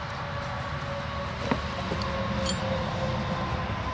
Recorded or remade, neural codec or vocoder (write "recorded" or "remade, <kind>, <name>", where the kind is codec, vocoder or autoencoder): recorded